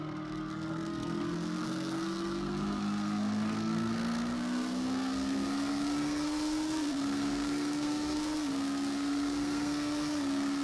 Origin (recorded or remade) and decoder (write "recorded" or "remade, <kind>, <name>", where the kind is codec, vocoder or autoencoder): remade, codec, SNAC